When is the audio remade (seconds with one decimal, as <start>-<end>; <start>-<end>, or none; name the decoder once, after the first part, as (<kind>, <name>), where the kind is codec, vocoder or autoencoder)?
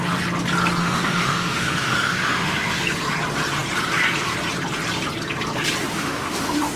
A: 0.8-2.8 (autoencoder, DAC-VAE); 5.8-6.8